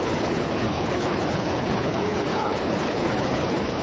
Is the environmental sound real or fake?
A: fake